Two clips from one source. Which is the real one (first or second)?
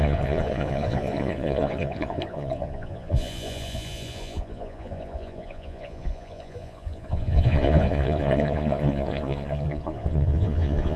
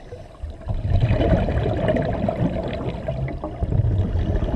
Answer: second